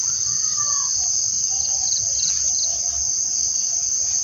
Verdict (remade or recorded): recorded